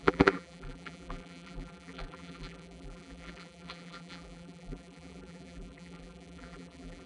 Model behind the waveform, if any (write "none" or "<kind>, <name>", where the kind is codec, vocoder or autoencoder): vocoder, BigVGAN v2